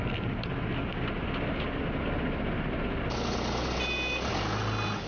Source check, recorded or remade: recorded